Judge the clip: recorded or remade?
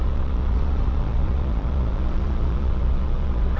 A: remade